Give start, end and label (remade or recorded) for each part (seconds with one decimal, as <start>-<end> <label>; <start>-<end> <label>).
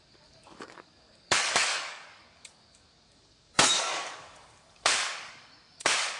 0.0-6.2 remade